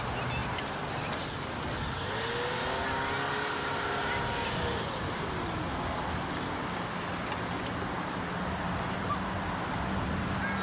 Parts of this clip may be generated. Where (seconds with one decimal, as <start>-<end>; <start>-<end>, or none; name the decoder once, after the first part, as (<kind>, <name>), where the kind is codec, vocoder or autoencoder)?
none